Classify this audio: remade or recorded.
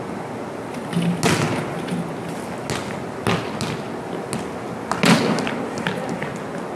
recorded